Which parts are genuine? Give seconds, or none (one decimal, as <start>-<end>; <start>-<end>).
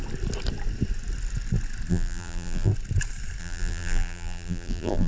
0.0-1.9; 2.7-3.4